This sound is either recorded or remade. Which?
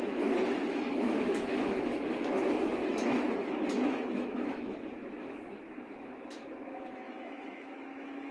remade